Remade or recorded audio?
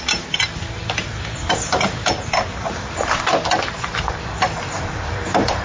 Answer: remade